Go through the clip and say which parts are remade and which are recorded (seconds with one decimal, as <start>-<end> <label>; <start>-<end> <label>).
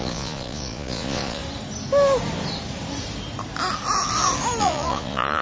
0.0-1.4 remade; 1.4-4.6 recorded; 4.6-5.4 remade